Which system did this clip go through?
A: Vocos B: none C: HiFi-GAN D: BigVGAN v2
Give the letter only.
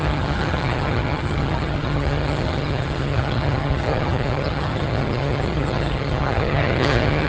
C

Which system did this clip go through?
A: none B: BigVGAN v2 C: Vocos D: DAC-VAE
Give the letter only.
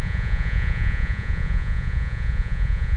C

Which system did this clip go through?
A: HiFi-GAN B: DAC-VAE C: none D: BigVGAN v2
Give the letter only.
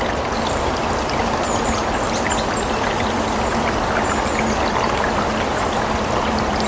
C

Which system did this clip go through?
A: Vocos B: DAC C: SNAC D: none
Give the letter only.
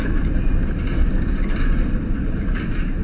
D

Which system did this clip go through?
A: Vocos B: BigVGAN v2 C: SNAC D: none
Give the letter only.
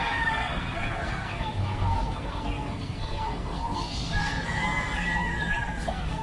C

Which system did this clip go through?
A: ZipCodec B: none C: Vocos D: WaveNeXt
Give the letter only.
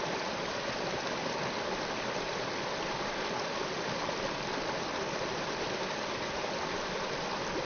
B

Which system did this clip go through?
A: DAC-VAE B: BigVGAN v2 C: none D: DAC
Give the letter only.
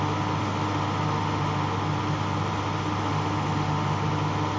C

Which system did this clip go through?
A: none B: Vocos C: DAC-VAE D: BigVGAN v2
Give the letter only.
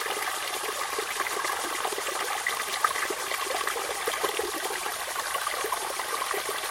A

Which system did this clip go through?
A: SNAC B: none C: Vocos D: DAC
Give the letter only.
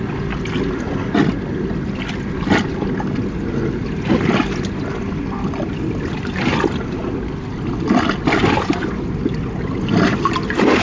B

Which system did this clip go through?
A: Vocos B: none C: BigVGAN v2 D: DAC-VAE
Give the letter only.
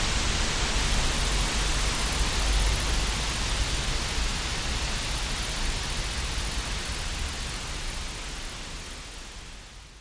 B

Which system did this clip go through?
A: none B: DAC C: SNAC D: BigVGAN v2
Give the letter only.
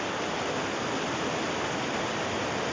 A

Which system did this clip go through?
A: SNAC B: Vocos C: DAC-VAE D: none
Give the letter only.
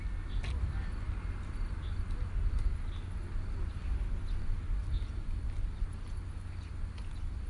D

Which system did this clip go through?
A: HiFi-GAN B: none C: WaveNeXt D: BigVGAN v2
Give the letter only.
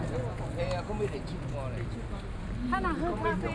B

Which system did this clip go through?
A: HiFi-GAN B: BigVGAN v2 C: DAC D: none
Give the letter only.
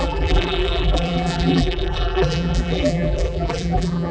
B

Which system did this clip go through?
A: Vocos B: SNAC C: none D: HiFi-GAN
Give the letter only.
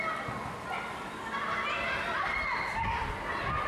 C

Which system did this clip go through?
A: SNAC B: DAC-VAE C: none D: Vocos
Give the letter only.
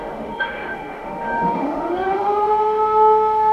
B